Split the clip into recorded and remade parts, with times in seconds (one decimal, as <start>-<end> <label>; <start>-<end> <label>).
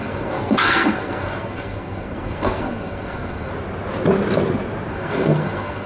0.0-3.5 remade; 3.5-4.9 recorded; 4.9-5.9 remade